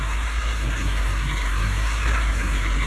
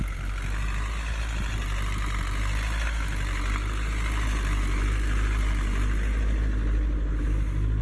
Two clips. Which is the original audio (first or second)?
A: second